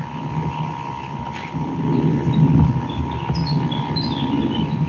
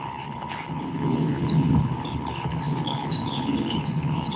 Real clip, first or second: first